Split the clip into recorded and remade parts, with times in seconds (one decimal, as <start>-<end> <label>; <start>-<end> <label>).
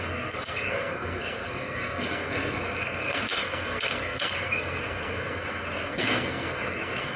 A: 0.0-7.2 remade